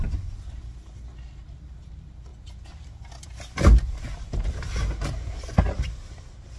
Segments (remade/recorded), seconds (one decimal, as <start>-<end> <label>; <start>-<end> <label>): 0.0-6.6 recorded